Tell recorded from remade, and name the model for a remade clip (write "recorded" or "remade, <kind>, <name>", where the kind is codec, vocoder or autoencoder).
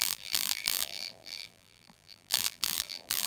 remade, vocoder, BigVGAN v2